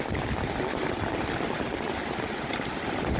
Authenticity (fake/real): real